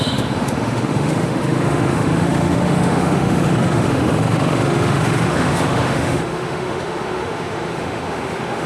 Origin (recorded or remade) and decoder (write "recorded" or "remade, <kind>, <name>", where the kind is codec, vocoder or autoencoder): remade, autoencoder, DAC-VAE